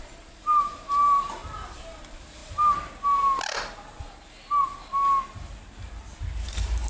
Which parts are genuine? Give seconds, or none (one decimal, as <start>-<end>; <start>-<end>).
1.4-2.0; 2.4-6.5